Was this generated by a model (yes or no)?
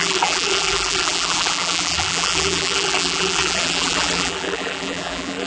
yes